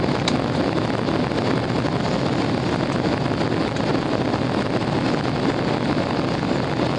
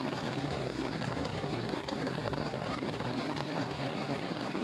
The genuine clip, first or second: first